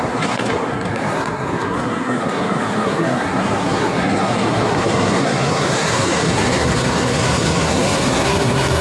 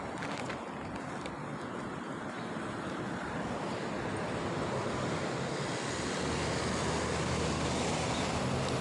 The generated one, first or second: first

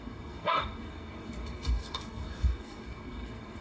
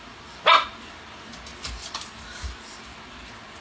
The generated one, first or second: first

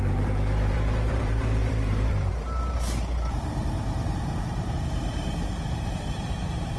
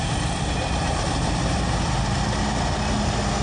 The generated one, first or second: first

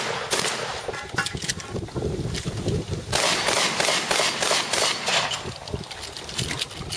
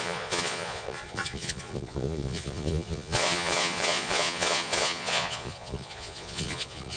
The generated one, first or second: second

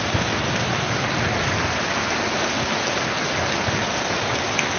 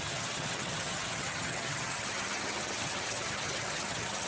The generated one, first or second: second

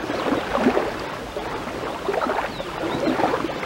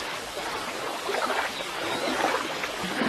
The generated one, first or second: second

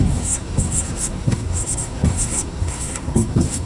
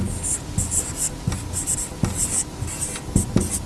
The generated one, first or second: first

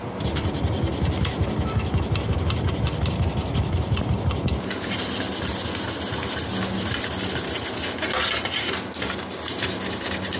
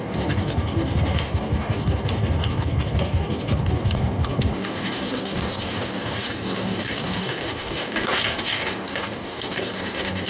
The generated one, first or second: second